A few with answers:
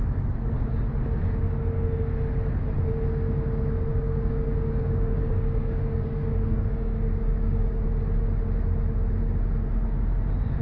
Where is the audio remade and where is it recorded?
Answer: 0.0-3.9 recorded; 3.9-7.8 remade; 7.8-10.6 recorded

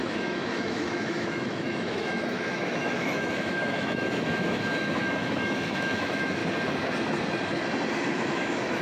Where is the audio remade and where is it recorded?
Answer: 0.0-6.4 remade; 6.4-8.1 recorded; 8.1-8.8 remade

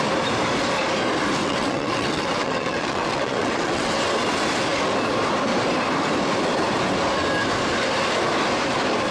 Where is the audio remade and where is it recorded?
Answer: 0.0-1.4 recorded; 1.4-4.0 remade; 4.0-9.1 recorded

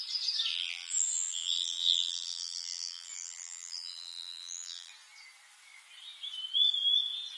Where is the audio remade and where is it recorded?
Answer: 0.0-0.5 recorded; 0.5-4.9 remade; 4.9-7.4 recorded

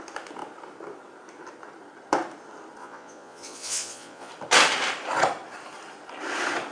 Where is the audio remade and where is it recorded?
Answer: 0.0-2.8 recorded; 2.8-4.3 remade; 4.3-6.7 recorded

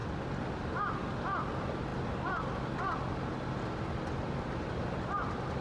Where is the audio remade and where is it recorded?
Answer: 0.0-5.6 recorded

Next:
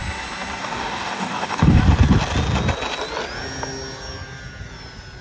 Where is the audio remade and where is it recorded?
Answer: 0.0-0.6 recorded; 0.6-1.8 remade; 1.8-5.2 recorded

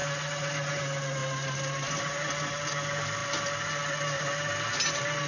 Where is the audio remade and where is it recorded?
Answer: 0.0-5.3 recorded